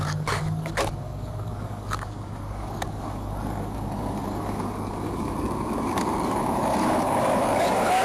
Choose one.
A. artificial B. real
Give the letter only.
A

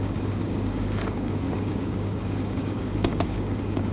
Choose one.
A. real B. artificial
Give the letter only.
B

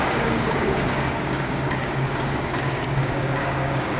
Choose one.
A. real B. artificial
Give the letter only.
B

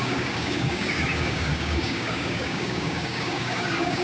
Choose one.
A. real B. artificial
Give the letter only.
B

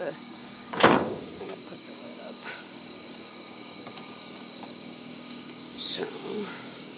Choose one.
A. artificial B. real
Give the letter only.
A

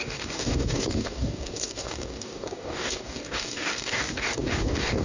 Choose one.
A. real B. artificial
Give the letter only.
B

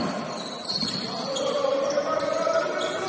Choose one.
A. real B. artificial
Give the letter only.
A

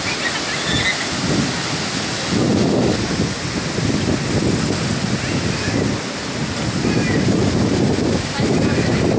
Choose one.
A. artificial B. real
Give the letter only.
B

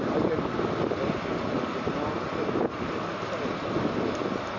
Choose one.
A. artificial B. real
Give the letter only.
B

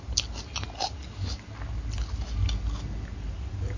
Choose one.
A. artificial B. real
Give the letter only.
B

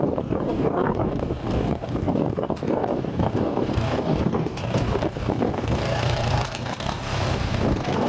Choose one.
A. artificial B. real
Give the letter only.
A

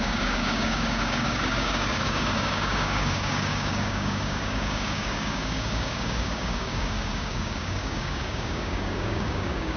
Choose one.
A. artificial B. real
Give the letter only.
A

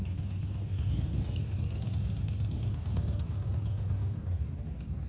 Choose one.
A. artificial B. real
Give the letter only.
A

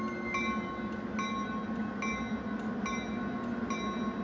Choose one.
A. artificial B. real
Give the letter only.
B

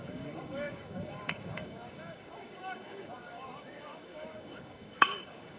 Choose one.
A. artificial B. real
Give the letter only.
A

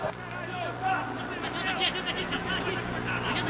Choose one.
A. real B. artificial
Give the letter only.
A